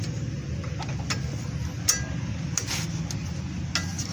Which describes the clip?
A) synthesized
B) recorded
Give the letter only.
B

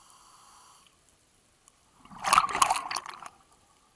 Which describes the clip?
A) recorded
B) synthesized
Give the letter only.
A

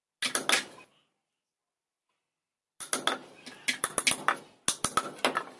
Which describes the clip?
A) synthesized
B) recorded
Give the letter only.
B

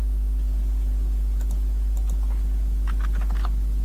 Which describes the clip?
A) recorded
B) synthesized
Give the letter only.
A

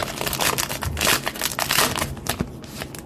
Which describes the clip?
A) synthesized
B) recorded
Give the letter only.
B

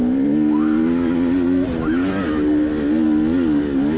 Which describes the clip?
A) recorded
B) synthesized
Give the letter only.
A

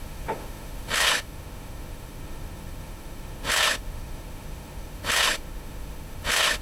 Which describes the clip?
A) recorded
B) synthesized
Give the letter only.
B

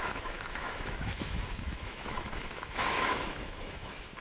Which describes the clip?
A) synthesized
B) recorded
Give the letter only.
A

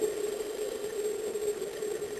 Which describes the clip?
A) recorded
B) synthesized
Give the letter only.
A